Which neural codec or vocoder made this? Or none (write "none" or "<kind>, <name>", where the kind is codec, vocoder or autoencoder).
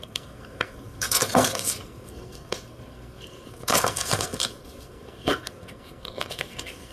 codec, SNAC